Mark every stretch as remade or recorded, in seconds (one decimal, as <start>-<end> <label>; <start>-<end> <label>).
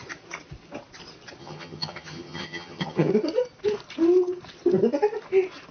0.0-1.4 recorded; 1.4-3.1 remade; 3.1-5.7 recorded